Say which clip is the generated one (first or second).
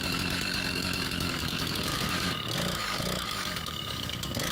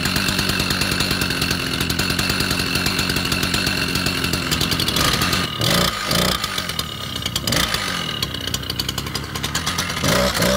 first